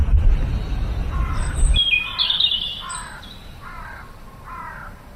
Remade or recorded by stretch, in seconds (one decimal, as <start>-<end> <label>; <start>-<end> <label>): 0.0-5.2 recorded